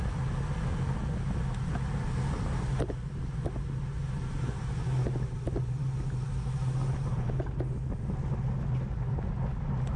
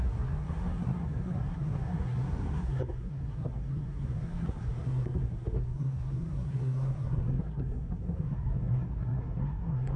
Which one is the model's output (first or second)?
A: second